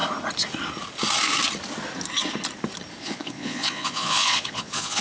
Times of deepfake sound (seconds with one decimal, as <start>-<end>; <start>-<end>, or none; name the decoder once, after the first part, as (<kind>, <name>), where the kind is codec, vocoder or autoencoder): 3.0-5.0 (vocoder, Vocos)